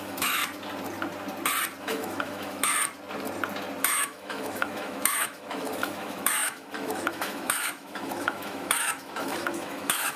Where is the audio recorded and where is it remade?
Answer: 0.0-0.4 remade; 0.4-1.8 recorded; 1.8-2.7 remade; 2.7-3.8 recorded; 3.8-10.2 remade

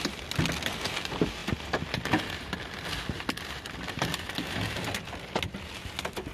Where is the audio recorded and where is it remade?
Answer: 0.0-6.3 recorded